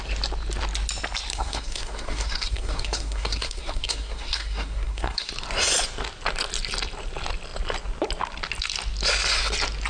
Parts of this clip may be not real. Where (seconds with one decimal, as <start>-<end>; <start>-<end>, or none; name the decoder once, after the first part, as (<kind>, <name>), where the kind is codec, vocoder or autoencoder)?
1.3-5.3 (codec, SNAC)